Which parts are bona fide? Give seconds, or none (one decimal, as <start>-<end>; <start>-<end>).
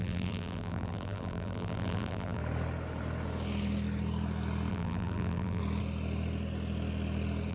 2.4-4.7; 5.6-7.5